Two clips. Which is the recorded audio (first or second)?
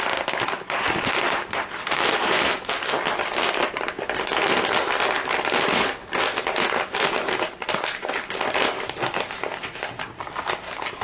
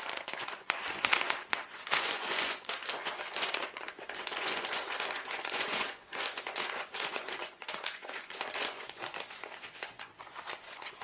first